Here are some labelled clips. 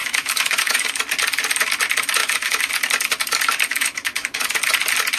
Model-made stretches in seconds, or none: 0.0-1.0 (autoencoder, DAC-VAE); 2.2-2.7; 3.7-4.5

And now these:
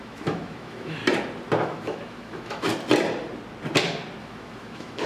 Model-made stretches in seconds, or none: 0.0-1.0 (autoencoder, DAC-VAE); 1.6-2.7; 4.2-5.1

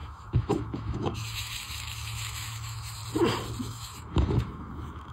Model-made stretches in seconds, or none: 0.0-3.0 (autoencoder, DAC-VAE); 3.6-5.1

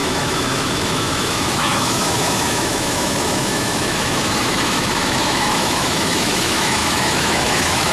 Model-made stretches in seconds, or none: 0.0-7.9 (autoencoder, DAC-VAE)

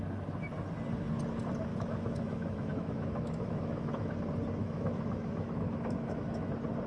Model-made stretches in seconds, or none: 1.7-4.1 (autoencoder, DAC-VAE); 4.6-6.5

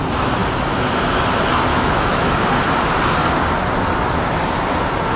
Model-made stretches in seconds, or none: 1.7-2.4 (autoencoder, DAC-VAE)

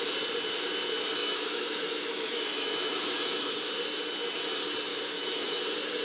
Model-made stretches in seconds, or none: 1.2-3.5 (autoencoder, DAC-VAE); 4.9-5.6

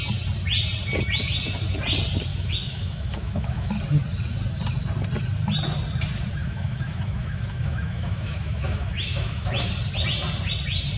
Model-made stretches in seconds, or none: 2.3-3.7 (autoencoder, DAC-VAE); 6.4-9.7